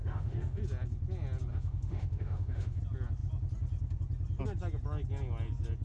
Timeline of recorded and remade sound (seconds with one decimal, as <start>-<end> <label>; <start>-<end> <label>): 0.0-0.6 remade; 0.6-1.5 recorded; 1.5-2.8 remade; 2.8-5.8 recorded